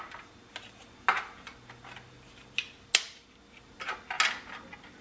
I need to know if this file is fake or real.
real